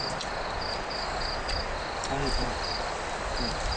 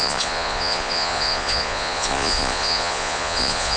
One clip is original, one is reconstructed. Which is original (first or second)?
first